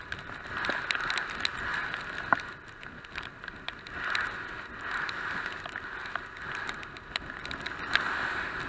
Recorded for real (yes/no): yes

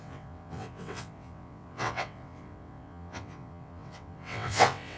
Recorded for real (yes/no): no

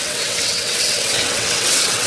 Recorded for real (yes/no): no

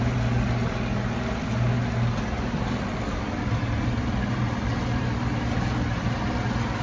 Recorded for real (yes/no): yes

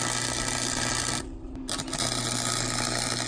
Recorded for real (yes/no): yes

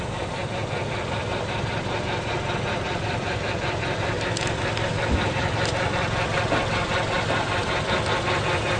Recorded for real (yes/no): yes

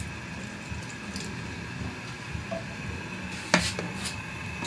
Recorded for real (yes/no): yes